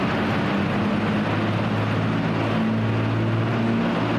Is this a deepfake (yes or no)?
no